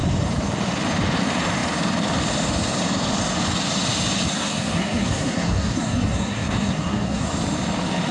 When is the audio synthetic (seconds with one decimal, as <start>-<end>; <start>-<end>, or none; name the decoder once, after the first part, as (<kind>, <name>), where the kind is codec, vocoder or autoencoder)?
4.3-7.3 (codec, SNAC)